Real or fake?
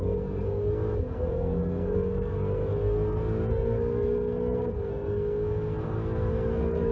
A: fake